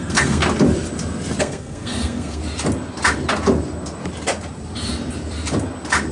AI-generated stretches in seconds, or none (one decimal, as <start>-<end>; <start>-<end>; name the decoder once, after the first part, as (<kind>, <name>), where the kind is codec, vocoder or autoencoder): 0.0-0.4 (codec, SNAC); 1.4-2.4